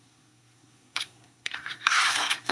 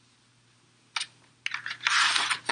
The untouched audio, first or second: second